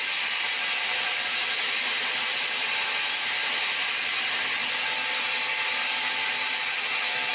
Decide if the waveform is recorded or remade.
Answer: recorded